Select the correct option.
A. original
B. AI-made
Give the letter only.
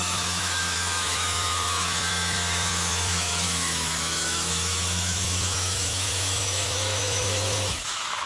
B